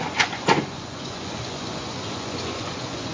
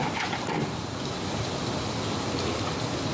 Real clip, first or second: second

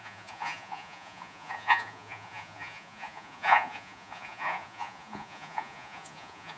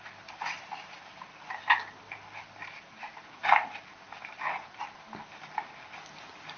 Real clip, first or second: second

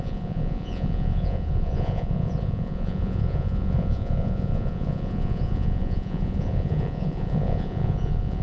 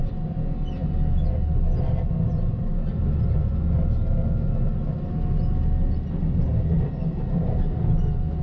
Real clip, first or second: second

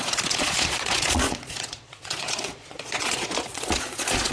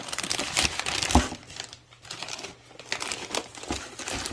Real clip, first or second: second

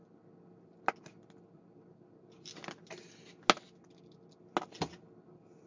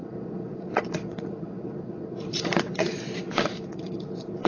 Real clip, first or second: first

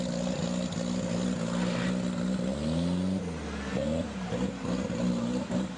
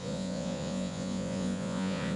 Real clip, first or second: first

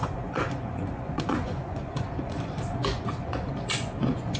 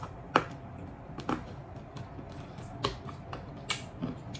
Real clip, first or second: second